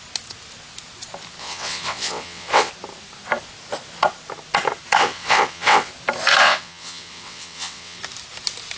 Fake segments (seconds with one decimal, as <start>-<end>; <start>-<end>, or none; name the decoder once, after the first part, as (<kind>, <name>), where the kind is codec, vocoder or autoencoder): 1.4-2.7 (vocoder, WaveNeXt); 5.0-5.9; 6.4-8.0